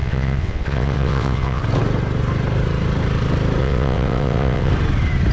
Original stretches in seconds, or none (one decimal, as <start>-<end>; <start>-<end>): 1.6-3.6; 4.7-5.3